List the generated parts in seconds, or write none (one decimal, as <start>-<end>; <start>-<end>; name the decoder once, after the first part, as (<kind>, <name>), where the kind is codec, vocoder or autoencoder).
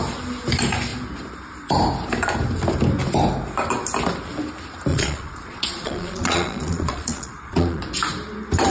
4.9-7.8 (vocoder, Vocos)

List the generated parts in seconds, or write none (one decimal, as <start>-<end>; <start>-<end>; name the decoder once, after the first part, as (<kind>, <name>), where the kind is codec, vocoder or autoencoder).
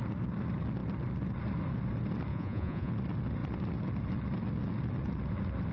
2.3-2.9 (vocoder, Vocos)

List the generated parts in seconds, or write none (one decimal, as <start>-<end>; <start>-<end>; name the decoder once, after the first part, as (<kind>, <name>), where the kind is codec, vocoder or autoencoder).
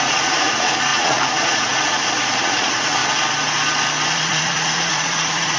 0.0-3.0 (vocoder, Vocos); 4.1-5.6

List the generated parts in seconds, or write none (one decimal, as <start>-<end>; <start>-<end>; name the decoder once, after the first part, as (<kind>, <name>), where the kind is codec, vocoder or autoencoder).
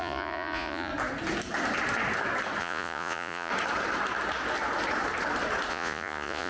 0.0-0.9 (vocoder, Vocos); 2.6-3.5; 5.7-6.5